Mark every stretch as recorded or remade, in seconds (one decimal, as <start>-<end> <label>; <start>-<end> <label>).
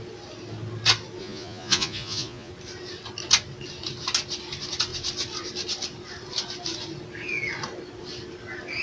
0.0-1.2 recorded; 1.2-2.5 remade; 2.5-8.8 recorded